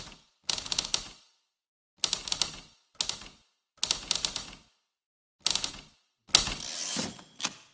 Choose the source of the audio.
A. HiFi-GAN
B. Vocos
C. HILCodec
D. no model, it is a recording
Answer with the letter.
D